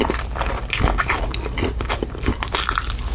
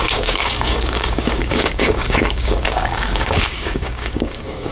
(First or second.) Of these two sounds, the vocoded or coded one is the second